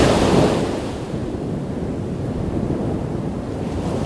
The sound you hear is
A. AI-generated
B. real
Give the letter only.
B